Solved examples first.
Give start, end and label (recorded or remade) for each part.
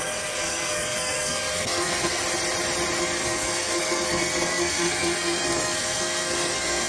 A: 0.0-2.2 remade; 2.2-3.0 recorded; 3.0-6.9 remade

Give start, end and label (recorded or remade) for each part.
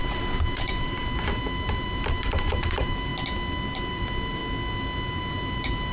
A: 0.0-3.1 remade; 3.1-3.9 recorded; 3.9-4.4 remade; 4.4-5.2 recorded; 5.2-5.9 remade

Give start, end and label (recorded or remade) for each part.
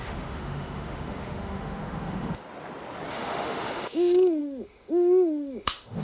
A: 0.0-2.4 remade; 2.4-3.1 recorded; 3.1-6.0 remade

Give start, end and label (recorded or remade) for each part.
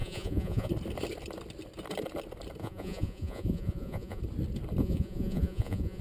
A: 0.0-0.7 remade; 0.7-2.6 recorded; 2.6-4.2 remade; 4.2-4.8 recorded; 4.8-6.0 remade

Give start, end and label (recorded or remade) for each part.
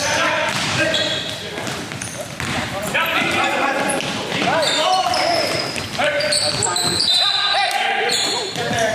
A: 0.0-8.9 remade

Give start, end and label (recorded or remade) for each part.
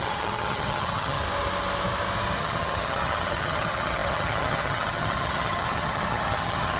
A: 0.0-1.2 remade; 1.2-2.4 recorded; 2.4-6.8 remade